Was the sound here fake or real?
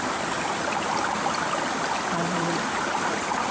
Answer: real